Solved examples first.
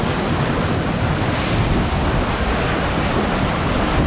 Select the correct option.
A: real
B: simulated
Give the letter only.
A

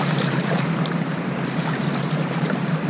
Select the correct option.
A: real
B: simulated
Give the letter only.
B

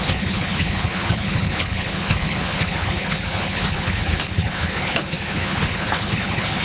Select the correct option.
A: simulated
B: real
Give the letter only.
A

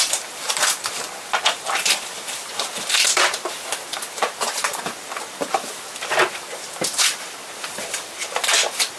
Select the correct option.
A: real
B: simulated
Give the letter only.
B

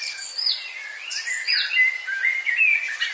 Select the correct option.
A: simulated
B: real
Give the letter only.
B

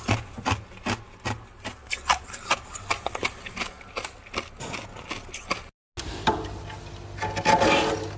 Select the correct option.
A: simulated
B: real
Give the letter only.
B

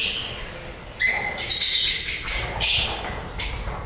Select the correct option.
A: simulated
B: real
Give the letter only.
B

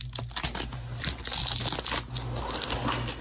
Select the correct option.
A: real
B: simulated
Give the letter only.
A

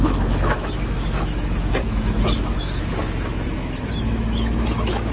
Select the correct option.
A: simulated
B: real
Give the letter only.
A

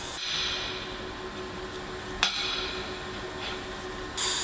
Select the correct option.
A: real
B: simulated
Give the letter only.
A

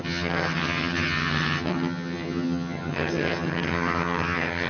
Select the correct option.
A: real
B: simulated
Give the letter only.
B